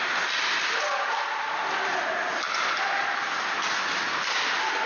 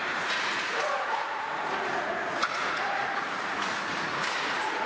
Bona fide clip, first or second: first